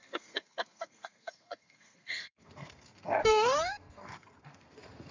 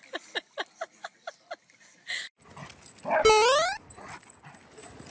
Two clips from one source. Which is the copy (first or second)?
first